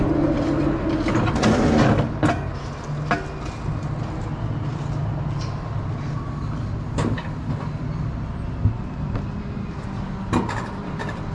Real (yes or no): yes